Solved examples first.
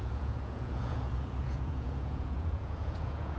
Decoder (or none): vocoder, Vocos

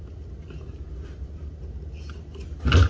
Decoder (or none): none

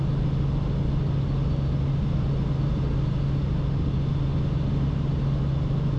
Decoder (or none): none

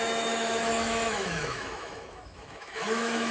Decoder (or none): autoencoder, DAC-VAE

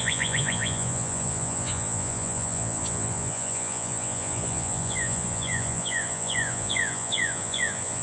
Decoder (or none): vocoder, Vocos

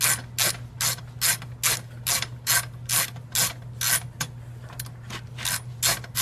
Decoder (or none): none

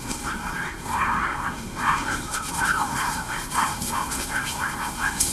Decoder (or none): codec, SNAC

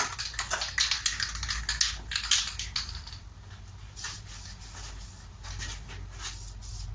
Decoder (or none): none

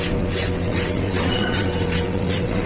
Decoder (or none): vocoder, WaveNeXt